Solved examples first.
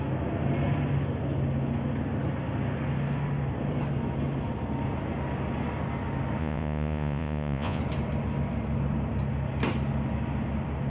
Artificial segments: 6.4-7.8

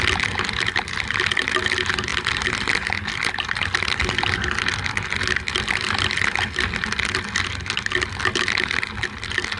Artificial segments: none